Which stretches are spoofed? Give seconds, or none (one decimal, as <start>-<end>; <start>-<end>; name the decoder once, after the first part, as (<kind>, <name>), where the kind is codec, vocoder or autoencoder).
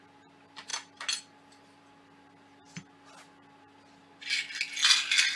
none